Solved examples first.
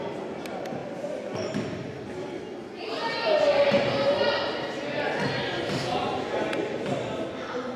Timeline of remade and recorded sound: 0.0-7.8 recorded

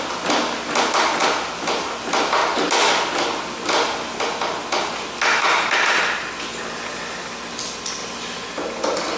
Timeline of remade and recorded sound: 0.0-9.2 recorded

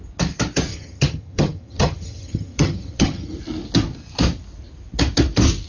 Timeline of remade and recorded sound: 0.0-0.7 recorded; 0.7-3.4 remade; 3.4-5.7 recorded

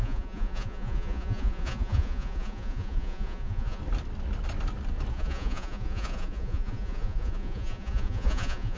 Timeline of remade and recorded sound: 0.0-3.8 remade; 3.8-5.1 recorded; 5.1-8.8 remade

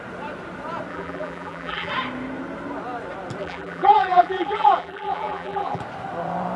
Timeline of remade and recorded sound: 0.0-0.9 recorded; 0.9-1.9 remade; 1.9-3.4 recorded; 3.4-5.8 remade; 5.8-6.6 recorded

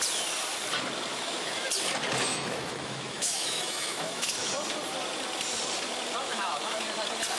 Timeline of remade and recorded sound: 0.0-1.1 recorded; 1.1-1.7 remade; 1.7-2.3 recorded; 2.3-4.5 remade; 4.5-6.3 recorded; 6.3-6.8 remade; 6.8-7.4 recorded

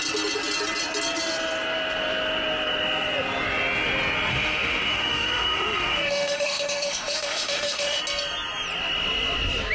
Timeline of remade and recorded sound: 0.0-4.3 recorded; 4.3-8.0 remade; 8.0-9.7 recorded